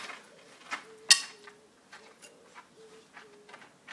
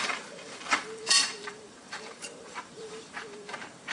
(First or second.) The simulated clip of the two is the second